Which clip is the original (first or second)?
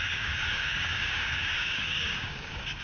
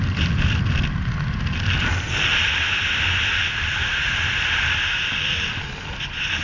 second